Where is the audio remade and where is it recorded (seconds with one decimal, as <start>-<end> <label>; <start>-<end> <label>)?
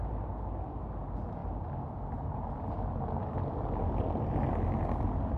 0.0-5.4 recorded